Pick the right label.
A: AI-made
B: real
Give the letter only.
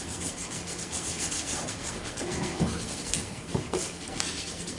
A